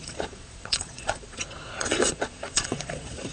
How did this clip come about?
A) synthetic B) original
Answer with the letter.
A